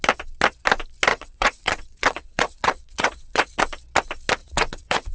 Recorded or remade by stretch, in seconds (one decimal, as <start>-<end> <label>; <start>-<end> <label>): 0.0-1.1 recorded; 1.1-3.5 remade; 3.5-4.4 recorded; 4.4-5.1 remade